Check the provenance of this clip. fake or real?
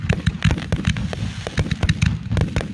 real